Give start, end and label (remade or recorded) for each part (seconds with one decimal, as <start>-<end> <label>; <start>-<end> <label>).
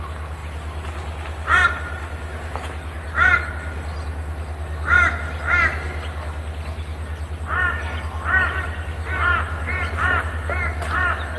0.0-11.4 recorded